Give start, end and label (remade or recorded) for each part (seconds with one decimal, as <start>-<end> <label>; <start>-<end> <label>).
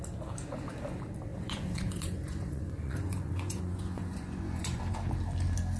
0.0-1.3 recorded; 1.3-4.8 remade; 4.8-5.8 recorded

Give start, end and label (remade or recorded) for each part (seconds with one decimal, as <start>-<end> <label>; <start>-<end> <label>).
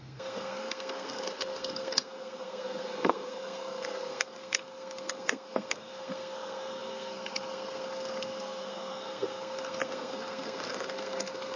0.0-11.6 remade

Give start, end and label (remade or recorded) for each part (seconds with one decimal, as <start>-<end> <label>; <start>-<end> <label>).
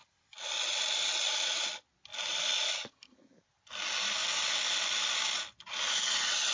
0.0-6.5 recorded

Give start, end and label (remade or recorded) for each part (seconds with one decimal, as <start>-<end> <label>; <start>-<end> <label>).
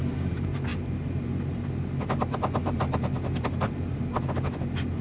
0.0-0.7 recorded; 0.7-1.9 remade; 1.9-2.6 recorded; 2.6-4.3 remade; 4.3-5.0 recorded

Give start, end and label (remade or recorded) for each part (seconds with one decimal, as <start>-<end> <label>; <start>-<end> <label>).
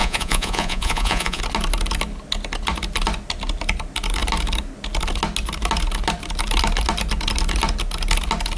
0.0-1.4 remade; 1.4-8.6 recorded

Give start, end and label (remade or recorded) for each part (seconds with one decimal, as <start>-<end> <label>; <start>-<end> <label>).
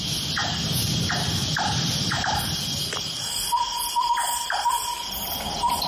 0.0-5.9 recorded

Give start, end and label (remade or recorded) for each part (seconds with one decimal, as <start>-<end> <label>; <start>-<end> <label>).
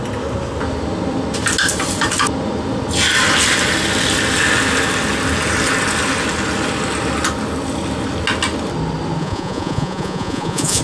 0.0-9.2 recorded; 9.2-10.8 remade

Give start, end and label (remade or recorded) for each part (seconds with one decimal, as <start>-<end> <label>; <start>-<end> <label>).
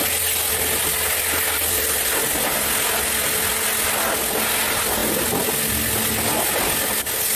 0.0-7.4 recorded